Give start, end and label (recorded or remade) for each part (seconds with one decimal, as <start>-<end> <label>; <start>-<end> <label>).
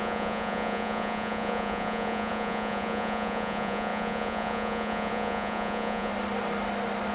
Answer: 0.0-6.1 remade; 6.1-7.1 recorded